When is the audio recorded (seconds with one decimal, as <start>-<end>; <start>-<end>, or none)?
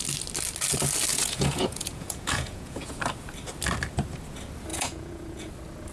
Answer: 0.0-1.1; 3.0-4.7; 5.5-5.9